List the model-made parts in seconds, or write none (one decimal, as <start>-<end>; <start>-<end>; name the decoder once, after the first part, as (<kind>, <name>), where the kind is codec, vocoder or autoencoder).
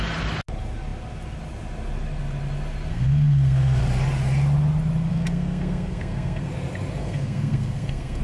2.9-3.8 (codec, SNAC); 5.1-6.5; 7.0-8.2